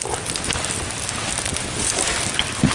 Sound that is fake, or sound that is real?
real